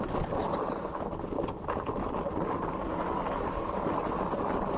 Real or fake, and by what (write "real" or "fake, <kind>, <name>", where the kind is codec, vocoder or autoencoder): real